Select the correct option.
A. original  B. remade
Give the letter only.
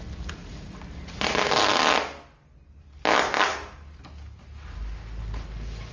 A